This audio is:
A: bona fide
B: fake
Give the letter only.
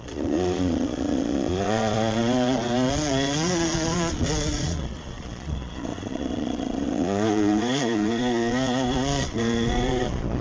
B